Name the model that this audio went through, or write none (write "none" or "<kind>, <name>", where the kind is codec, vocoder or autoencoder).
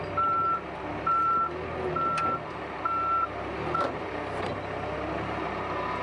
none